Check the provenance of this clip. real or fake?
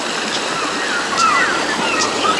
real